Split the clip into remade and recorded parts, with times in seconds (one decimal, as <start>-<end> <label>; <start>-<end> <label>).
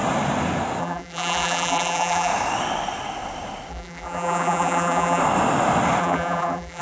0.0-0.8 recorded; 0.8-2.3 remade; 2.3-3.7 recorded; 3.7-5.2 remade; 5.2-6.0 recorded; 6.0-6.8 remade